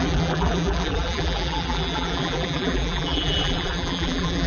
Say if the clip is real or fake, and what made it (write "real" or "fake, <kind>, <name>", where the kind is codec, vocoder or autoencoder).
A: fake, vocoder, BigVGAN v2